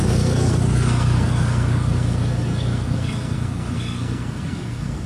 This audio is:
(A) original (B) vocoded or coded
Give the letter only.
B